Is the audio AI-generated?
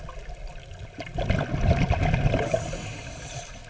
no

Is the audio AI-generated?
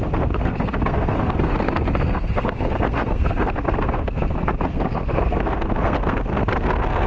yes